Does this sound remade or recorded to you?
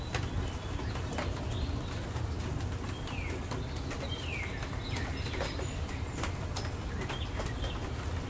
recorded